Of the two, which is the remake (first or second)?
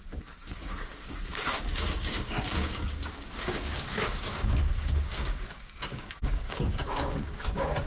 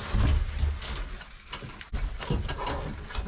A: first